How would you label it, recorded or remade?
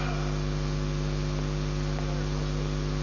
recorded